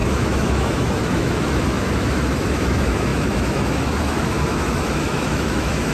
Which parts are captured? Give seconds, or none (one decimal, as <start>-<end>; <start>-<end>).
none